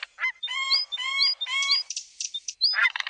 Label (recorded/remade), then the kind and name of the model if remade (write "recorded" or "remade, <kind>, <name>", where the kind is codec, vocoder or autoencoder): remade, vocoder, BigVGAN v2